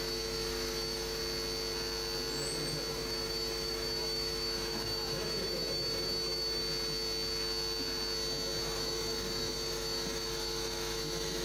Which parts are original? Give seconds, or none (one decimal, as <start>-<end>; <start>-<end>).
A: 1.2-2.9; 6.6-8.6